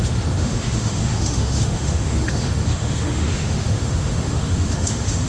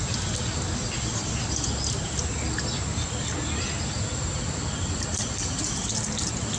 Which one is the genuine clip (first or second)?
second